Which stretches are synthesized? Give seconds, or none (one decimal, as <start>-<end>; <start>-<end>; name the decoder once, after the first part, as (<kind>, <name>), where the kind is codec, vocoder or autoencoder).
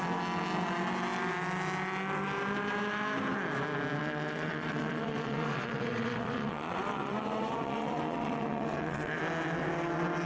4.0-9.2 (vocoder, WaveNeXt)